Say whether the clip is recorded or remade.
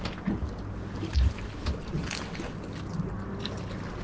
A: recorded